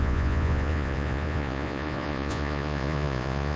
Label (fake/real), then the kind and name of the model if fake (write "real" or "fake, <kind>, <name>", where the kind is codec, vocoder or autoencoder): fake, vocoder, Vocos